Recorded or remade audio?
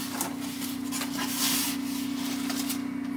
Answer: recorded